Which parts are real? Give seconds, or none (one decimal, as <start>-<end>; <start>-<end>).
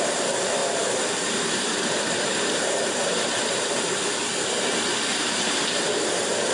0.0-0.6; 3.7-5.1; 5.6-6.5